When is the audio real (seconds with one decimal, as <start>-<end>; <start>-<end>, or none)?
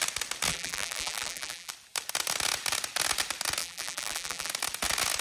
0.0-0.5; 1.7-3.6; 4.5-5.2